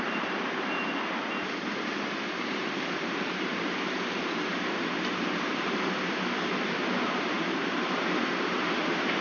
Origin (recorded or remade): remade